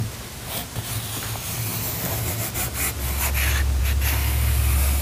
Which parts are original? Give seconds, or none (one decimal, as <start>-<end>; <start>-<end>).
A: 0.0-5.0